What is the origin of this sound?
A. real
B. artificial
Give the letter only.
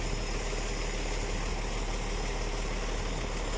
A